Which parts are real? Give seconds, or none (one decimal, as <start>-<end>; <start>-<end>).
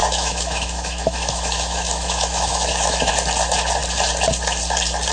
3.1-5.1